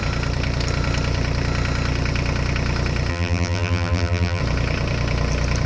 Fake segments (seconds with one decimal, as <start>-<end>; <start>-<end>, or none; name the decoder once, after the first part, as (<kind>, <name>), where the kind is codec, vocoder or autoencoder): 3.1-4.4 (vocoder, BigVGAN v2)